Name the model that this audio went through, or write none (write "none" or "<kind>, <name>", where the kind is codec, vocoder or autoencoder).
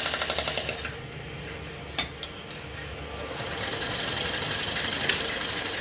none